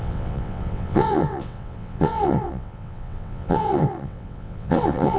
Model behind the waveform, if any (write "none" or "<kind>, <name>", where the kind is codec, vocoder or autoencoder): vocoder, WaveNeXt